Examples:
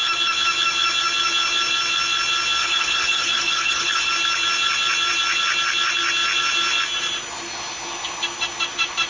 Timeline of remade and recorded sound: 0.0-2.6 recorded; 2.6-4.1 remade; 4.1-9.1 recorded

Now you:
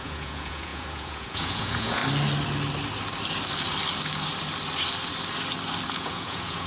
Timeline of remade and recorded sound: 0.0-2.0 remade; 2.0-5.9 recorded; 5.9-6.7 remade

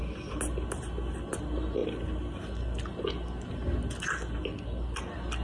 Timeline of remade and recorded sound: 0.0-5.4 recorded

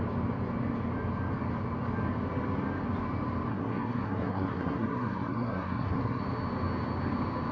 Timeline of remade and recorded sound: 0.0-3.5 recorded; 3.5-6.2 remade; 6.2-7.5 recorded

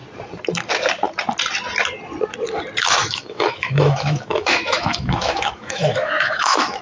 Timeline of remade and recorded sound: 0.0-3.0 recorded; 3.0-6.8 remade

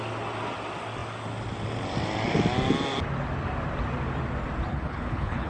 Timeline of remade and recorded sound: 0.0-4.7 recorded; 4.7-5.5 remade

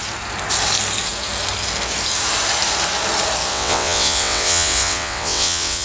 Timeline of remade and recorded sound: 0.0-3.5 recorded; 3.5-5.8 remade